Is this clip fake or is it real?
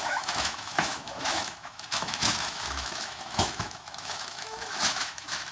fake